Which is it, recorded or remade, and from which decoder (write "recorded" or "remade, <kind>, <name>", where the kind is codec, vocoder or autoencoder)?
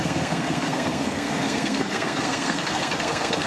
remade, codec, SNAC